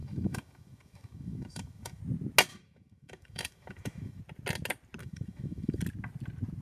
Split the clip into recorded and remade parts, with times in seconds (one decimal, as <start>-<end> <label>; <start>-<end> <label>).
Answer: 0.0-2.0 remade; 2.0-2.5 recorded; 2.5-4.2 remade; 4.2-5.0 recorded; 5.0-5.8 remade; 5.8-6.6 recorded